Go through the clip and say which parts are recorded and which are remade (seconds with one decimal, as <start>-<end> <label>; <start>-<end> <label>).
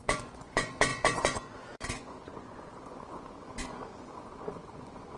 0.0-5.2 remade